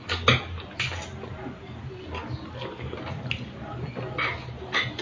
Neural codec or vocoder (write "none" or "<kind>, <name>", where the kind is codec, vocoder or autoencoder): none